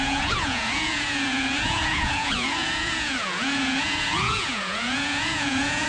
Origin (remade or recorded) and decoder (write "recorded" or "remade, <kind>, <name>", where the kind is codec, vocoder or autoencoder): remade, vocoder, Vocos